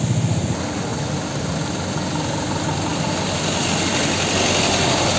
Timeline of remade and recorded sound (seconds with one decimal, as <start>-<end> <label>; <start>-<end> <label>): 0.0-0.9 recorded; 0.9-1.5 remade; 1.5-2.9 recorded; 2.9-3.6 remade; 3.6-5.2 recorded